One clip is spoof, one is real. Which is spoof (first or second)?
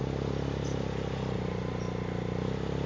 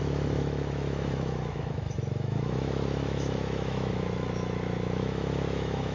second